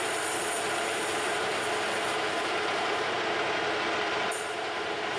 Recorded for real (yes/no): no